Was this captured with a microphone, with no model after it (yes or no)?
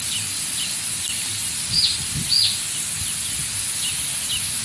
yes